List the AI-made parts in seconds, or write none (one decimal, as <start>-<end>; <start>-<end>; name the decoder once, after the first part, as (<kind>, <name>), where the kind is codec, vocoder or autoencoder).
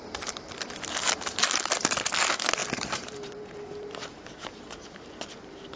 2.6-4.6 (vocoder, BigVGAN v2)